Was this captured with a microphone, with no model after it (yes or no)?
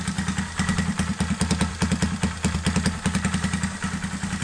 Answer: yes